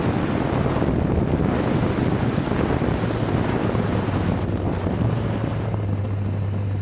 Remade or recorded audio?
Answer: recorded